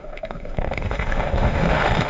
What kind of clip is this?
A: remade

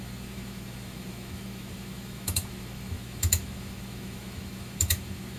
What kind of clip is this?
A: remade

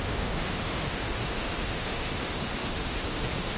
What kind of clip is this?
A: remade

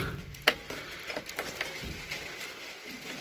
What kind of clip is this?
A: recorded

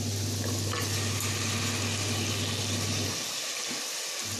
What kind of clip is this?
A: recorded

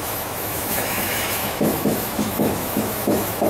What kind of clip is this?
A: remade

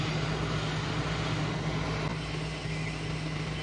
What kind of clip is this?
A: recorded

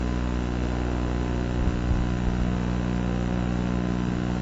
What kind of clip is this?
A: recorded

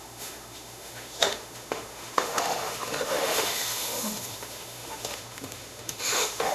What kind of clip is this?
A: remade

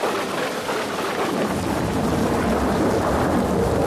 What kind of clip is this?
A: recorded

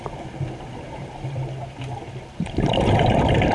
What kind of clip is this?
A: recorded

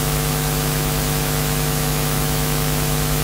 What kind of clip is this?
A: remade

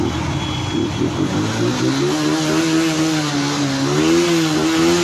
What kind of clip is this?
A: recorded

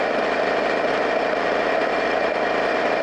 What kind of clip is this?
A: recorded